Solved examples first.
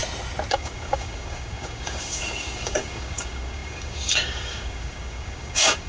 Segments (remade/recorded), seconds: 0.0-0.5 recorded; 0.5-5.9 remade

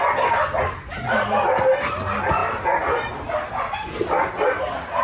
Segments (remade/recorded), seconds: 0.0-5.0 recorded

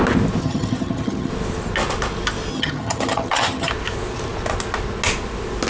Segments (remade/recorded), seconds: 0.0-0.4 recorded; 0.4-1.3 remade; 1.3-2.5 recorded; 2.5-3.7 remade; 3.7-5.7 recorded

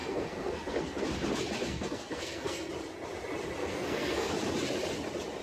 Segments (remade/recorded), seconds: 0.0-1.0 remade; 1.0-1.6 recorded; 1.6-2.7 remade; 2.7-3.6 recorded; 3.6-4.3 remade; 4.3-5.4 recorded